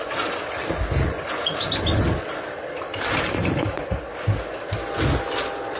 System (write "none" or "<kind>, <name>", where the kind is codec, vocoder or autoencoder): none